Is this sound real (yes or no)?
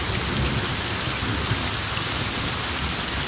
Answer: yes